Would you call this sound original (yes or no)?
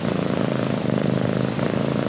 yes